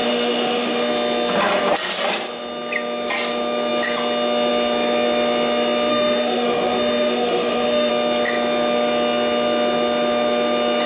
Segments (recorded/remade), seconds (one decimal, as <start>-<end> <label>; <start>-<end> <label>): 0.0-0.9 remade; 0.9-5.9 recorded; 5.9-7.9 remade; 7.9-10.9 recorded